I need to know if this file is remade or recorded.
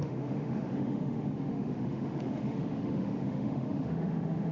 remade